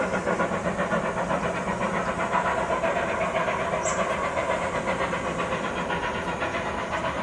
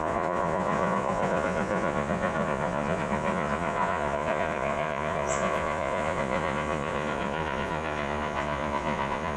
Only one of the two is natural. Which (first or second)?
first